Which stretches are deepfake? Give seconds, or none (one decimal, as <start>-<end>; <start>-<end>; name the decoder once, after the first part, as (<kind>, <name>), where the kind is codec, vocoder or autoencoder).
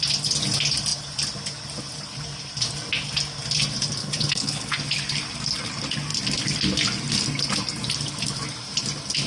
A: 4.0-4.7 (codec, HILCodec)